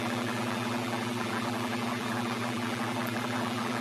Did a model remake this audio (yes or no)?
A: yes